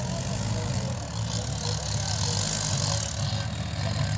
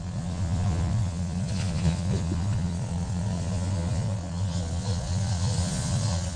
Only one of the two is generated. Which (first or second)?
second